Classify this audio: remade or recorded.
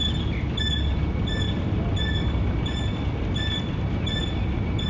recorded